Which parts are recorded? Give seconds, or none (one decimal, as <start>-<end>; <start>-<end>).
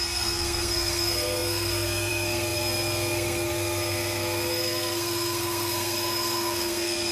none